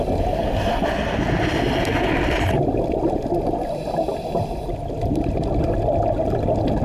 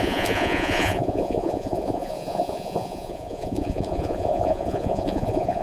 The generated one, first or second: second